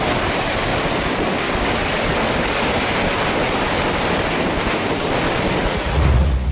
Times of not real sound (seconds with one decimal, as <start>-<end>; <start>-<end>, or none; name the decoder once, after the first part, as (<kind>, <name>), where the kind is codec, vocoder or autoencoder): 5.6-6.5 (vocoder, Vocos)